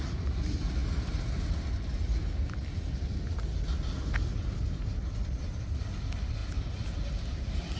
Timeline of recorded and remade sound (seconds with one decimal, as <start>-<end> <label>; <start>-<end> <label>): 0.0-7.8 recorded

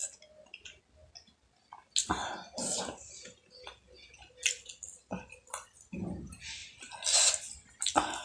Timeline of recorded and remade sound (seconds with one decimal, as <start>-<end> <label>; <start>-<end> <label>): 0.0-8.2 recorded

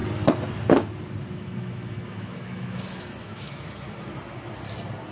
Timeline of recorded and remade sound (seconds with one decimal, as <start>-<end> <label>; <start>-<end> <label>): 0.0-1.3 recorded; 1.3-4.1 remade; 4.1-5.1 recorded

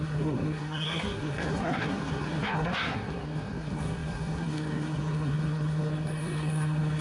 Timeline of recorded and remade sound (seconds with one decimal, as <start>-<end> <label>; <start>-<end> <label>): 0.0-7.0 remade

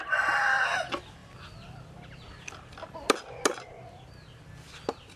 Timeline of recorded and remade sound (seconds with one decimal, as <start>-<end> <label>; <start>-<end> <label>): 0.0-5.2 recorded

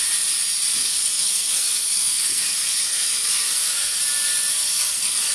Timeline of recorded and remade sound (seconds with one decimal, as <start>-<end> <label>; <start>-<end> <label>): 0.0-0.8 recorded; 0.8-4.0 remade; 4.0-4.6 recorded; 4.6-5.3 remade

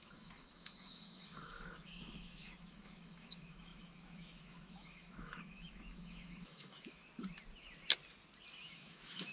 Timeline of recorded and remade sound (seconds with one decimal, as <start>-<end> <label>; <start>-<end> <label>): 0.0-7.0 remade; 7.0-8.6 recorded; 8.6-9.3 remade

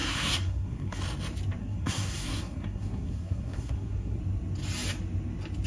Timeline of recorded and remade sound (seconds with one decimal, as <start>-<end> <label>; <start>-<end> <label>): 0.0-1.0 remade; 1.0-1.6 recorded; 1.6-4.2 remade; 4.2-5.7 recorded